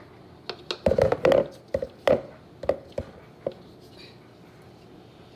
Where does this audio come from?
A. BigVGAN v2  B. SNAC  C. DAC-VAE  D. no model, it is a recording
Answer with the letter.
D